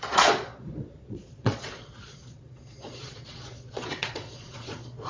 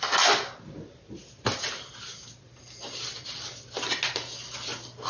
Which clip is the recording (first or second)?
second